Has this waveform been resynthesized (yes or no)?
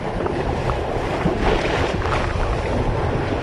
no